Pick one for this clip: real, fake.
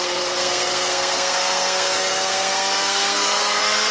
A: fake